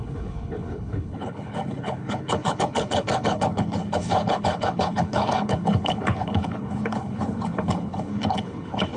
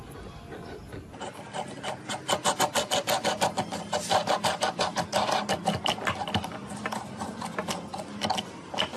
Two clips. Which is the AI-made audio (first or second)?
first